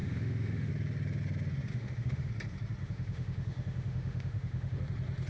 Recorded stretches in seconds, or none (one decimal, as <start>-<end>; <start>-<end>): 0.7-1.7; 2.3-2.8; 4.8-5.3